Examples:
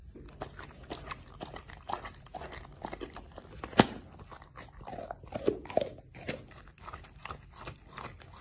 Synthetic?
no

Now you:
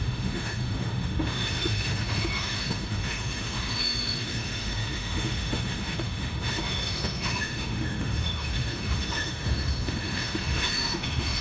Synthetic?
yes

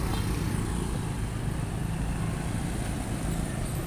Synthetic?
no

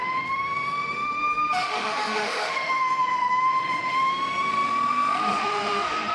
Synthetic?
yes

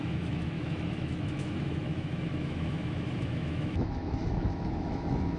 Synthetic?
yes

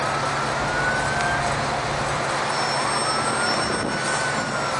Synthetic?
no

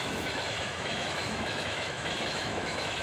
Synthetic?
yes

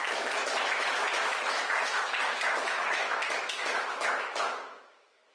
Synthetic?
yes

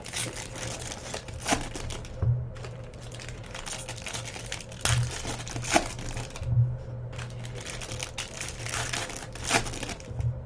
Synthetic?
no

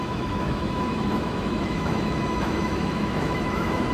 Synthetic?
yes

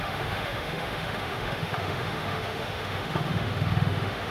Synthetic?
yes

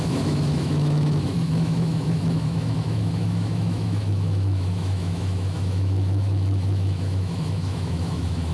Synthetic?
yes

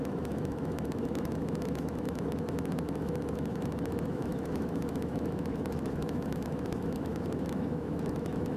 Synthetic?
yes